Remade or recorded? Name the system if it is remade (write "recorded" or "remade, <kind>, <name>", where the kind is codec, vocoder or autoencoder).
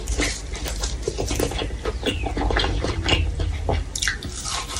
remade, vocoder, BigVGAN v2